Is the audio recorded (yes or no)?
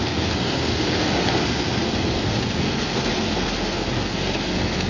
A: no